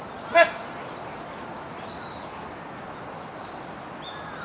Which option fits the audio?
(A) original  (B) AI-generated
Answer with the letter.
A